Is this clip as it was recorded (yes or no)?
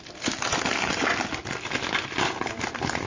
yes